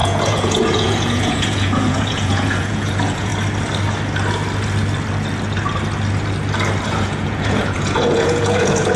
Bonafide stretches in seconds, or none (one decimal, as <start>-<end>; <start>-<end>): 3.3-6.9